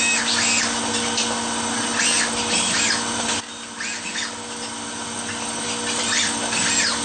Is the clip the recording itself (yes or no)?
yes